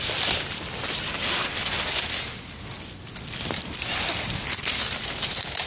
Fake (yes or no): no